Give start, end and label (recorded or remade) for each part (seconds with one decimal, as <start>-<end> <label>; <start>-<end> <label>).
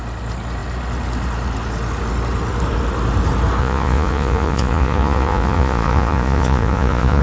0.0-3.6 recorded; 3.6-7.2 remade